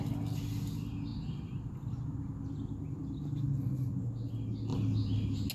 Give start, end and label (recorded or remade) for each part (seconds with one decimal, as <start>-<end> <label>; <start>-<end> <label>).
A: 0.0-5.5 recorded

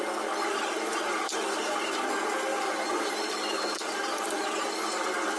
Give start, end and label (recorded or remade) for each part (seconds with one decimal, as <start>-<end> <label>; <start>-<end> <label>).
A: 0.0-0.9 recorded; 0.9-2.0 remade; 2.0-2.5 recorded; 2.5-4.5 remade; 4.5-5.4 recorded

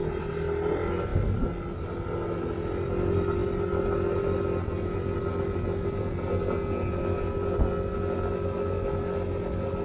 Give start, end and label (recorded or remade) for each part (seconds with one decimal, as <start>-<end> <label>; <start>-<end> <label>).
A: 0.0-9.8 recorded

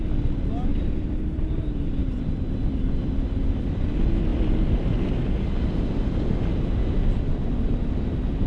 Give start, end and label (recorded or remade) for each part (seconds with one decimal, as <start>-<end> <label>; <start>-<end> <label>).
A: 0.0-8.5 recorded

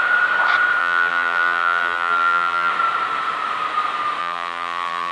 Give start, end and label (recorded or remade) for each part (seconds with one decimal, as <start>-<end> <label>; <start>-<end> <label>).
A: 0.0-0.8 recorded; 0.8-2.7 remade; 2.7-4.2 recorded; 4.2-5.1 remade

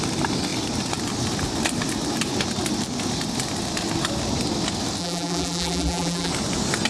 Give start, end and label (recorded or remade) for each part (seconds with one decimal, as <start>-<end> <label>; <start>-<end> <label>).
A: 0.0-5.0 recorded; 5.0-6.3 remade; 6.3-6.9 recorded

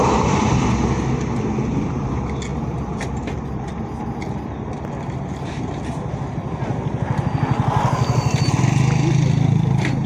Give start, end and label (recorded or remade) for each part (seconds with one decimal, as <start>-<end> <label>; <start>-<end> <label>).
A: 0.0-10.1 recorded

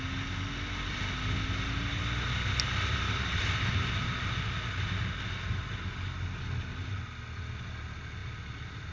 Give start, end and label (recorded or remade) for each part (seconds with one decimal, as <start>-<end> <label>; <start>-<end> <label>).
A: 0.0-8.9 recorded